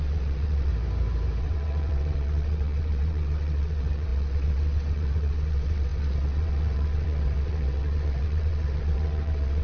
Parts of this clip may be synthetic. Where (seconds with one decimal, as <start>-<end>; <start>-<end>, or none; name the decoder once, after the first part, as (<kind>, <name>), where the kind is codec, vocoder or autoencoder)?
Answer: 0.0-0.7 (vocoder, WaveNeXt); 1.4-9.6